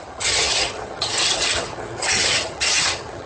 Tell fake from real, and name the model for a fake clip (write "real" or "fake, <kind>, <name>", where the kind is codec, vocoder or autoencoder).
fake, vocoder, HiFi-GAN